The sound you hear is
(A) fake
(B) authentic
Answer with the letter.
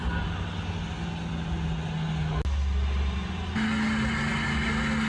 B